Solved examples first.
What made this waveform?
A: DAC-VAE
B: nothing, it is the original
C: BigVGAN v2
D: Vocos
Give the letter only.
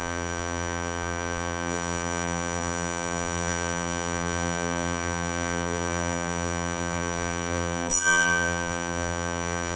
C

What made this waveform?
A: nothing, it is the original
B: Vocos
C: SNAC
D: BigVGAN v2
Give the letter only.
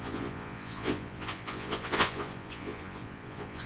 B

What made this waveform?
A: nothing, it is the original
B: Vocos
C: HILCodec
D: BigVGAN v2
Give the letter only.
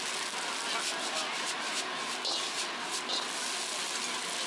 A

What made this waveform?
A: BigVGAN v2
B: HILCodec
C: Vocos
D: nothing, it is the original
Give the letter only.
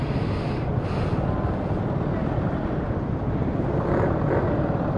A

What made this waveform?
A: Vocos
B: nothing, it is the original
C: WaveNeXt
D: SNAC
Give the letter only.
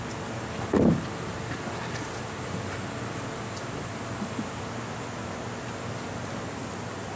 B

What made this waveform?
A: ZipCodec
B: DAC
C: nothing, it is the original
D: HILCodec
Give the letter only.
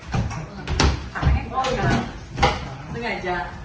C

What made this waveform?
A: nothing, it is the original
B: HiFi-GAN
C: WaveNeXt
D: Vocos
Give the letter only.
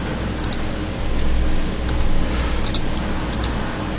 A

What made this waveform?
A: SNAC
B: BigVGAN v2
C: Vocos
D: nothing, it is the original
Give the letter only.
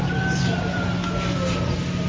D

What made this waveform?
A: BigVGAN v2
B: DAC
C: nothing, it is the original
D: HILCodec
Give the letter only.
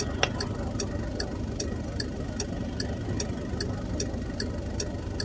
C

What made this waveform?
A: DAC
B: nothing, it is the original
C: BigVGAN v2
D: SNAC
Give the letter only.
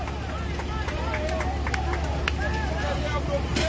B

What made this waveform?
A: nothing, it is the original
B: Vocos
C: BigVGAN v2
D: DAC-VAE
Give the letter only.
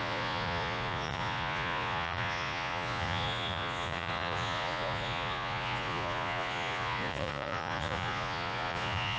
B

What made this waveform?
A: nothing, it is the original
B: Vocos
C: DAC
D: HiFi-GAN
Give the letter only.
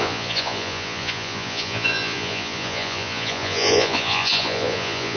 B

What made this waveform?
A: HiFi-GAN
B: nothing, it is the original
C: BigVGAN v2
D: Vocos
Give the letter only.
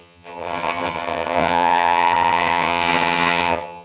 A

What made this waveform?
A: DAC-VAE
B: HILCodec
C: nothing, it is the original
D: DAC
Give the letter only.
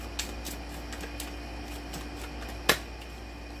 C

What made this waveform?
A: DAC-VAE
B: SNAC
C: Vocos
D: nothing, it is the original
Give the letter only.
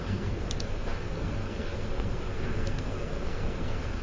B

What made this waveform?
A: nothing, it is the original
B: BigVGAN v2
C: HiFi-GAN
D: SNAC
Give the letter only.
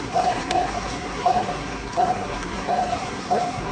D